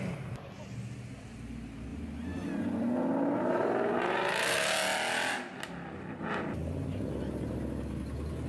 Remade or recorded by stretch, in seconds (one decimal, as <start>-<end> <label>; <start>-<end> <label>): 0.0-8.5 recorded